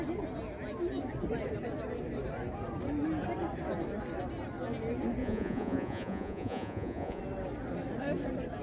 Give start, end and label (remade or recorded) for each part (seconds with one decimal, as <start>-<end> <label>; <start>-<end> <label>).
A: 0.0-5.2 recorded; 5.2-7.2 remade; 7.2-8.6 recorded